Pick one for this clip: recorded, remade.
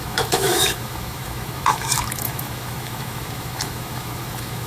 remade